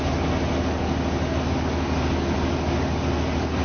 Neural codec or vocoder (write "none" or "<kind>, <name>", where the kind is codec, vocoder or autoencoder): none